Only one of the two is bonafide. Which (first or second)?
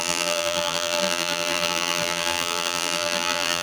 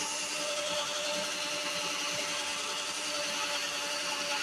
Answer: second